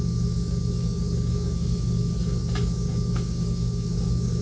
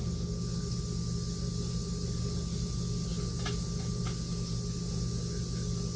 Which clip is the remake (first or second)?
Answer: first